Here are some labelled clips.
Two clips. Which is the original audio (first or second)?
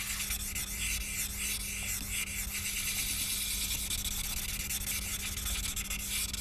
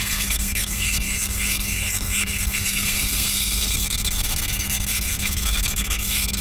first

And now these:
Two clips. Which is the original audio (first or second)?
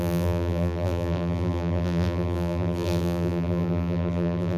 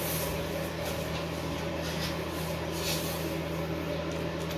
second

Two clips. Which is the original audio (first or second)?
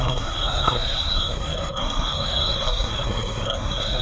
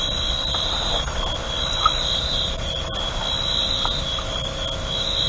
second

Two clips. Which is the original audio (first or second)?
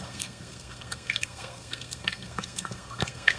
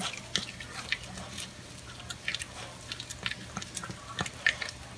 second